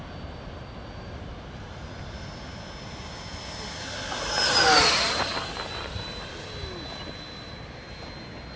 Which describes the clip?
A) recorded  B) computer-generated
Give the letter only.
A